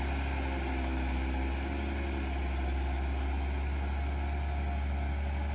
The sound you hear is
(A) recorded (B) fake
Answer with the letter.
A